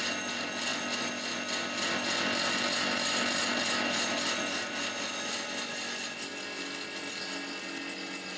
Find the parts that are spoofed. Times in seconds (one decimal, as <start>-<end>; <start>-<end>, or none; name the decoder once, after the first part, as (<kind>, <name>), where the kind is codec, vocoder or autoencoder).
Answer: none